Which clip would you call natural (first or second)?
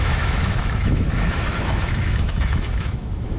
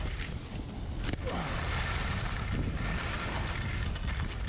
second